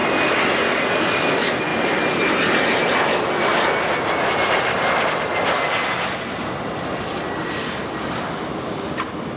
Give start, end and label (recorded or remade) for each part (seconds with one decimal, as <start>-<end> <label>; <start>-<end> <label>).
0.0-9.4 recorded